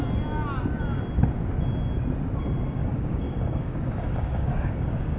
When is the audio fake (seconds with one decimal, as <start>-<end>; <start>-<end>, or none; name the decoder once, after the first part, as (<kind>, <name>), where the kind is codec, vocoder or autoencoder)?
2.8-5.2 (codec, DAC)